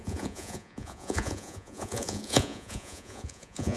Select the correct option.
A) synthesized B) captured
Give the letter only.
A